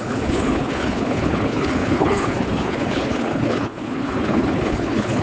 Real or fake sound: fake